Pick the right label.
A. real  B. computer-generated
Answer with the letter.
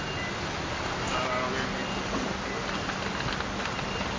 A